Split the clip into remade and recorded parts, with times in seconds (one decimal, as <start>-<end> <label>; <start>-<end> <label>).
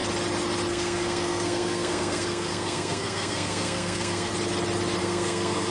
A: 0.0-0.7 recorded; 0.7-4.3 remade; 4.3-5.0 recorded; 5.0-5.7 remade